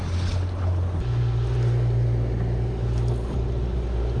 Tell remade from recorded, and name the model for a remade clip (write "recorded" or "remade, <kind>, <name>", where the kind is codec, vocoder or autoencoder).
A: recorded